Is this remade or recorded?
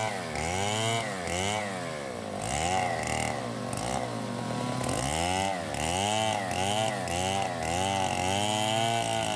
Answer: recorded